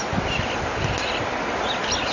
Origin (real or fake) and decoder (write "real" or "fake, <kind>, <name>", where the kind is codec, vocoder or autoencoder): real